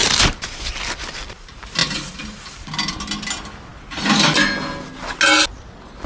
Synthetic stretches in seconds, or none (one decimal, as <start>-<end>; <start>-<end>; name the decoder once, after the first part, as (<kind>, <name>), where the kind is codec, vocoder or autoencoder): 0.0-0.7 (vocoder, BigVGAN v2)